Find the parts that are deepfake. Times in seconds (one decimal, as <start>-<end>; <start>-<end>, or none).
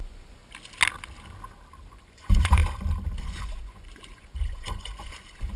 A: 0.0-0.4; 1.9-2.6; 3.2-5.6